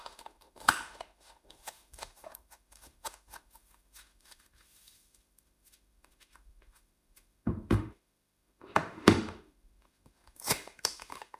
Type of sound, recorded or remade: remade